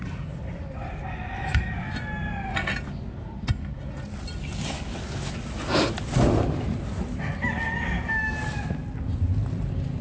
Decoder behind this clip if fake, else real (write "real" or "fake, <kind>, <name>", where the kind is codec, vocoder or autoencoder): real